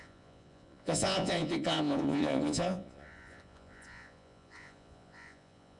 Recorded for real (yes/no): no